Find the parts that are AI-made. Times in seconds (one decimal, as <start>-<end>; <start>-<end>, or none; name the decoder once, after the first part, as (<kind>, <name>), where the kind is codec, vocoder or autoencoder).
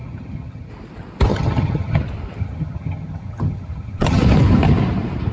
0.0-0.7 (vocoder, HiFi-GAN); 1.3-2.0; 2.4-4.2